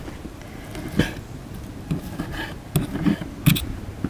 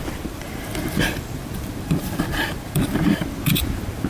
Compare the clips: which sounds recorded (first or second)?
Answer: first